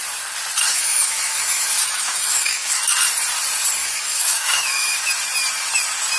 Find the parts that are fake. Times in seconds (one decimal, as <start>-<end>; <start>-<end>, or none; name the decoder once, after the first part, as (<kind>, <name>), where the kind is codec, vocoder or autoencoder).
0.7-2.8 (autoencoder, DAC-VAE); 3.8-5.1